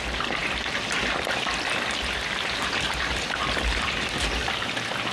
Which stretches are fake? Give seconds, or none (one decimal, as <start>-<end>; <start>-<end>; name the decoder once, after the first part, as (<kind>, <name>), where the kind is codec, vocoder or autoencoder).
0.4-3.5 (vocoder, BigVGAN v2)